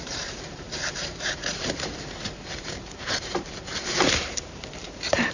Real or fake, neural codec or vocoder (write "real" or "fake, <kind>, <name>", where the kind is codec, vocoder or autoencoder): fake, vocoder, BigVGAN v2